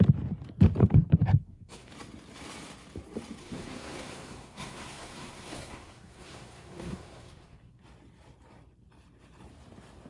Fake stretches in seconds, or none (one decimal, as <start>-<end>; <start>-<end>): 0.8-1.9; 3.4-7.8